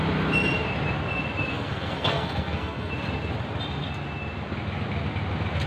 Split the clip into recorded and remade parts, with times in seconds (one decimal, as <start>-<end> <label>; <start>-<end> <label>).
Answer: 0.0-1.5 recorded; 1.5-2.9 remade; 2.9-5.7 recorded